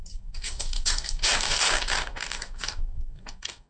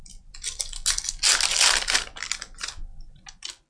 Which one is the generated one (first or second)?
first